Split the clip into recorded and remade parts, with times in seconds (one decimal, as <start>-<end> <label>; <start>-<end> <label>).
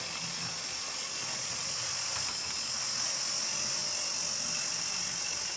0.0-5.6 recorded